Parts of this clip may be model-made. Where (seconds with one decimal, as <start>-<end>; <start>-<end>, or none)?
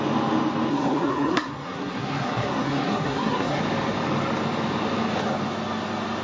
0.7-3.6